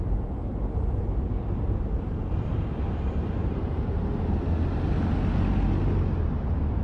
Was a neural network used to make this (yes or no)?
no